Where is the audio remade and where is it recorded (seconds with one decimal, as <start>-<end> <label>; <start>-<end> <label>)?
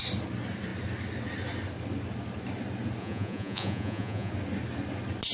0.0-3.0 recorded; 3.0-4.3 remade; 4.3-5.3 recorded